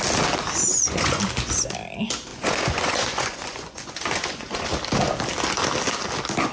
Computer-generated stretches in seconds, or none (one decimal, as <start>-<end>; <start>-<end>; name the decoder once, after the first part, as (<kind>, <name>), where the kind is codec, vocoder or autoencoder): 0.6-1.2 (vocoder, Vocos); 2.3-4.7